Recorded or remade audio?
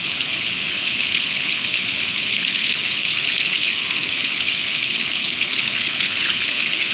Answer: remade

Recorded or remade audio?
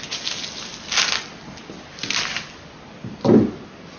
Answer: recorded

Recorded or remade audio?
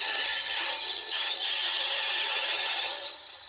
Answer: remade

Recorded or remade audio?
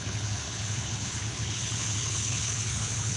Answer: remade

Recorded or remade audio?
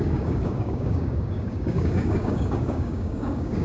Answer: remade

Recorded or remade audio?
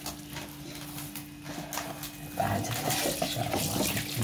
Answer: recorded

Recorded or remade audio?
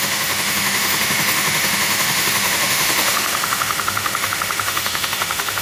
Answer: remade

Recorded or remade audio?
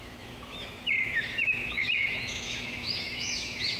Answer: remade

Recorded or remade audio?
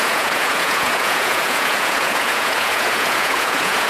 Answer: remade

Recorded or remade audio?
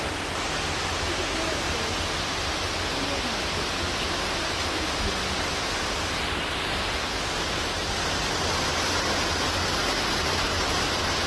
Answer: recorded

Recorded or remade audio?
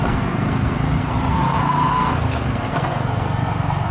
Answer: remade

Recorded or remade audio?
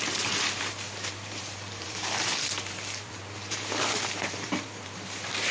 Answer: remade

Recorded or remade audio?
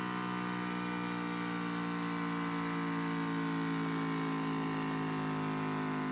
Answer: recorded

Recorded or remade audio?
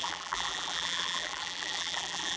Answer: remade